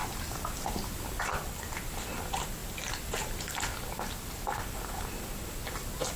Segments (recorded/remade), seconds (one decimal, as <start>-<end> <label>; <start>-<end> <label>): 0.0-6.2 recorded